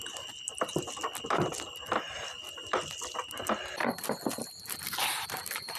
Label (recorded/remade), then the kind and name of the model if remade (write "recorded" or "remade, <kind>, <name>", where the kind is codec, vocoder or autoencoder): recorded